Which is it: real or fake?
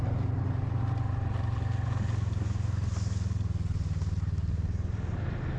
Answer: real